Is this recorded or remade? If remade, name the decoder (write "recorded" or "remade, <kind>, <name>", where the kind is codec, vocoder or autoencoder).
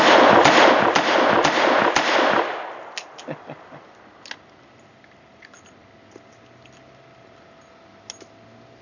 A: recorded